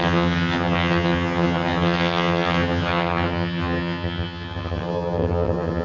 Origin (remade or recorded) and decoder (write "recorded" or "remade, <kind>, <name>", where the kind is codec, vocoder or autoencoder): remade, vocoder, HiFi-GAN